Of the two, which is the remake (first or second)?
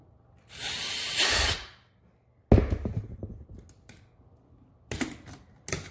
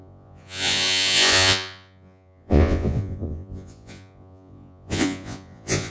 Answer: second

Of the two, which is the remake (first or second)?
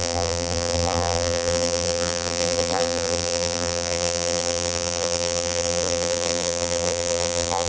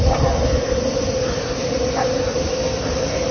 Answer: first